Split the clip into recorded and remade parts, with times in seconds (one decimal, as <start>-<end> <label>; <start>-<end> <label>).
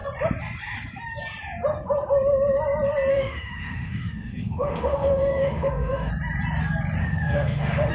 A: 0.0-3.1 recorded; 3.1-6.1 remade; 6.1-7.0 recorded; 7.0-7.9 remade